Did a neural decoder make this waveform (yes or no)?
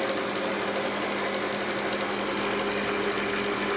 no